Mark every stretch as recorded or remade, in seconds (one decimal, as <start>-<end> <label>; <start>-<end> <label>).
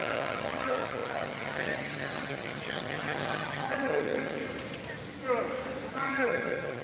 0.0-4.4 remade; 4.4-5.9 recorded; 5.9-6.8 remade